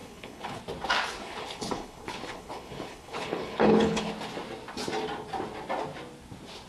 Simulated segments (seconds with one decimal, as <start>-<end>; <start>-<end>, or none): 0.0-0.6; 1.1-4.1